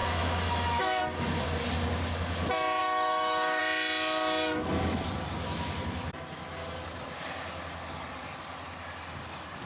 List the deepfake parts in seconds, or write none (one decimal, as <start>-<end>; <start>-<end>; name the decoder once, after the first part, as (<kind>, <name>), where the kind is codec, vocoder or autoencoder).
0.0-1.0 (autoencoder, DAC-VAE); 2.8-3.6